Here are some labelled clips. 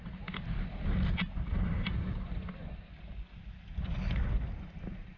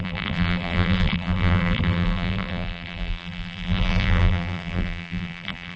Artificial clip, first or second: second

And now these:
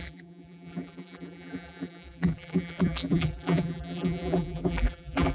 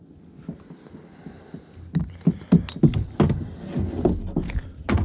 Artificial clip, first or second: first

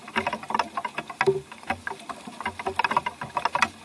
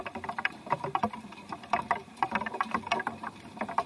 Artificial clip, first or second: second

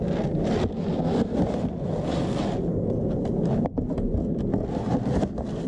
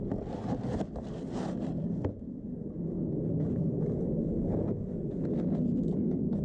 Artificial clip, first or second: second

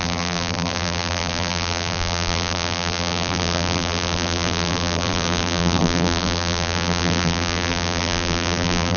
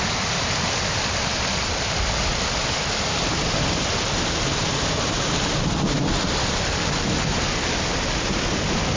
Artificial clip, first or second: first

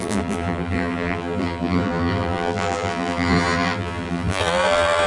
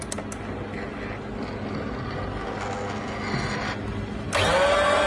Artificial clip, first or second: first